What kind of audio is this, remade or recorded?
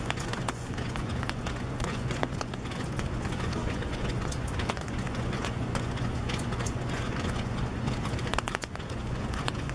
remade